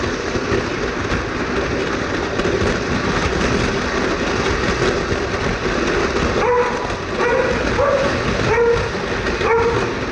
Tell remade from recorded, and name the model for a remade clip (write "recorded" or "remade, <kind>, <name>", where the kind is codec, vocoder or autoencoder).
recorded